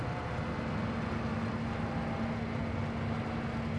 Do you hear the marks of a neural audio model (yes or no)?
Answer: no